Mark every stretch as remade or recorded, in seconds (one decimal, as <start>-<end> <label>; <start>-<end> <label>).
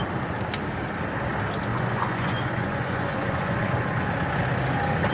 0.0-1.7 recorded; 1.7-4.1 remade; 4.1-5.1 recorded